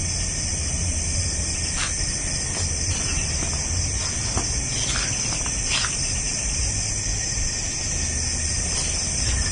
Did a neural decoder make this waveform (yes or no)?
no